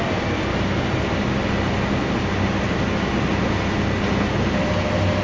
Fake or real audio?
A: real